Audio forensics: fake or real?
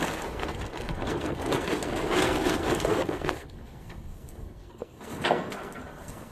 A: fake